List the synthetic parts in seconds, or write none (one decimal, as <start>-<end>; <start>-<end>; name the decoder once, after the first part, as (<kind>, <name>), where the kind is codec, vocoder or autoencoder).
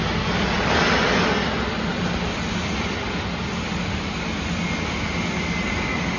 none